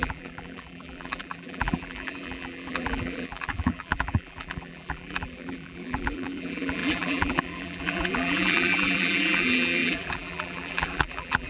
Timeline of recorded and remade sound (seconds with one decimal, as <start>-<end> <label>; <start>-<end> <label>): 0.0-11.5 remade